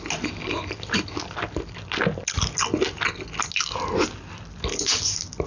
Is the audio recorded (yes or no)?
yes